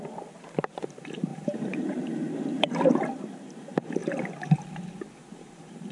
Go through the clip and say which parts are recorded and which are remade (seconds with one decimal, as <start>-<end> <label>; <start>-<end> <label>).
0.0-4.0 remade; 4.0-5.1 recorded; 5.1-5.9 remade